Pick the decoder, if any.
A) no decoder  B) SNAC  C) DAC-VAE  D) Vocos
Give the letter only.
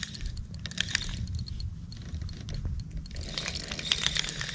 A